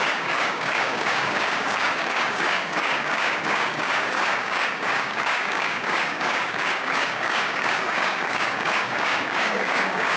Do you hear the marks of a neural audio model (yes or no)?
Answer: yes